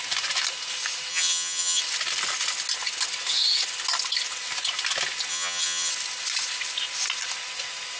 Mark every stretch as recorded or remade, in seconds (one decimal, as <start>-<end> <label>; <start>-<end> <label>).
0.0-1.1 recorded; 1.1-1.8 remade; 1.8-5.3 recorded; 5.3-5.9 remade; 5.9-8.0 recorded